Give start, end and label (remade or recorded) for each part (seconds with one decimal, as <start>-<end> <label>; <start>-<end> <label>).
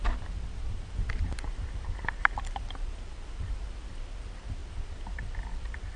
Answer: 0.0-3.6 remade; 3.6-4.6 recorded; 4.6-6.0 remade